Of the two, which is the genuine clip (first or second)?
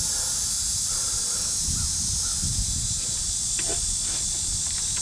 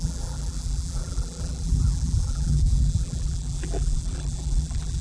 first